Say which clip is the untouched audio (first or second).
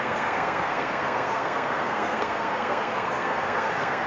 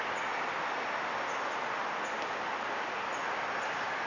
second